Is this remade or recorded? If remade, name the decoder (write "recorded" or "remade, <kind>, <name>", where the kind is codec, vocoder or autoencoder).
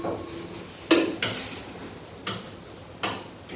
recorded